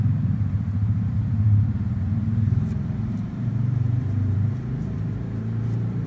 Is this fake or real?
fake